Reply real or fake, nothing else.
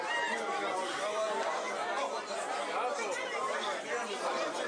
real